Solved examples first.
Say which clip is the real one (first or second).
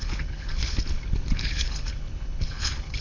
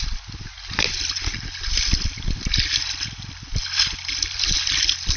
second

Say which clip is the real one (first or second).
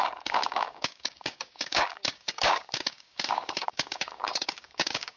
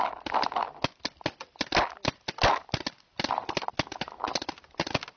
second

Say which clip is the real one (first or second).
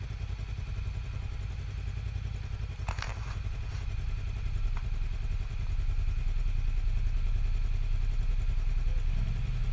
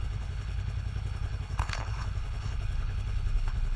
first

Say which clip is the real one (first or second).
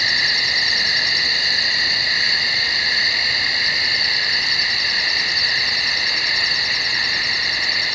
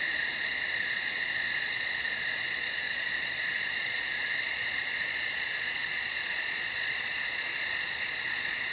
first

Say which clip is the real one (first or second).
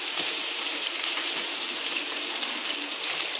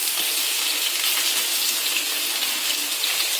second